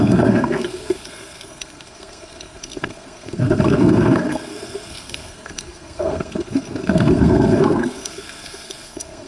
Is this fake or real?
fake